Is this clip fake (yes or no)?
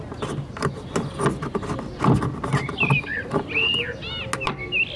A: no